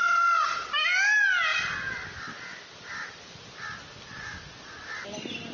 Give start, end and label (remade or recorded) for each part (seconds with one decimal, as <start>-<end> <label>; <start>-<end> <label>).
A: 0.0-5.5 recorded